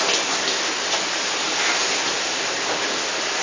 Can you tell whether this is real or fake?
real